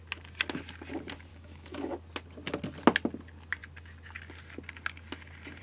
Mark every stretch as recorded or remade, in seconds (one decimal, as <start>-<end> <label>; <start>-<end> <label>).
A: 0.0-1.3 recorded; 1.3-1.9 remade; 1.9-5.6 recorded